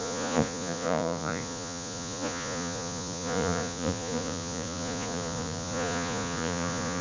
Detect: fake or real fake